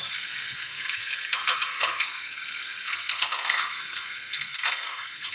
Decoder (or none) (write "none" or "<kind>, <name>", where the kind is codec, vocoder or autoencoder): codec, SNAC